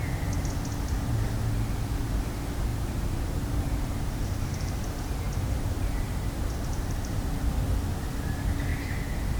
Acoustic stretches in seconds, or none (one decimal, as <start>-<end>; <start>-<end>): 0.0-2.7; 7.3-9.4